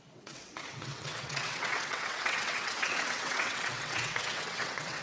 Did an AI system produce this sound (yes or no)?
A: yes